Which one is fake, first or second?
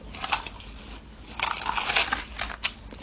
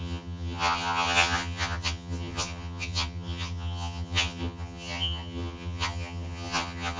second